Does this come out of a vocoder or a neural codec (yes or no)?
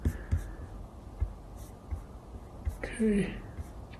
no